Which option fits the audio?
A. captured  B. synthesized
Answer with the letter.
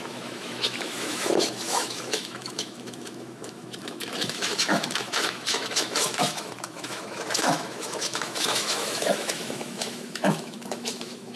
B